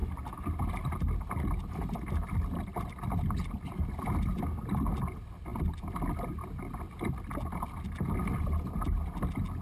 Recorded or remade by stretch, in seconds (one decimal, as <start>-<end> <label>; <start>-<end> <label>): 0.0-9.6 recorded